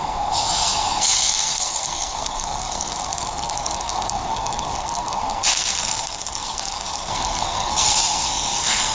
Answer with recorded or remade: remade